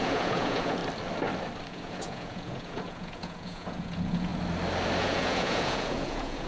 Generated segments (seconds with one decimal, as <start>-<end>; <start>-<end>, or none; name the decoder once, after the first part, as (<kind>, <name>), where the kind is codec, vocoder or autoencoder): 0.0-0.8 (vocoder, Vocos); 1.7-4.3; 5.0-6.5